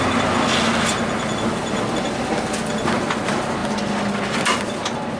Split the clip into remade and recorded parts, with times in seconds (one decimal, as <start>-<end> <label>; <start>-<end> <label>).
0.0-5.2 recorded